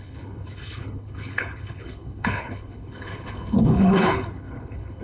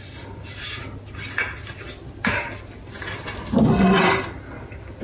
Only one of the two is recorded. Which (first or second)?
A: second